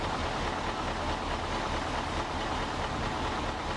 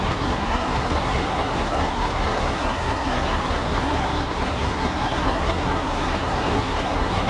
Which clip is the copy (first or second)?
second